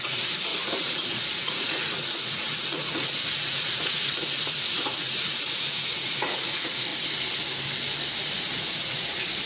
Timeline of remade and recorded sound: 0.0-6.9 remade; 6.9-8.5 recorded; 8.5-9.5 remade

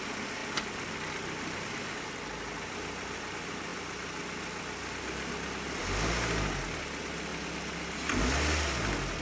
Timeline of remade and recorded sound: 0.0-9.2 recorded